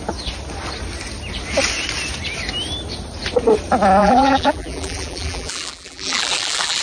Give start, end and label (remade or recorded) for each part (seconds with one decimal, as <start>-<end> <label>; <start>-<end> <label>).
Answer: 0.0-4.0 recorded; 4.0-6.8 remade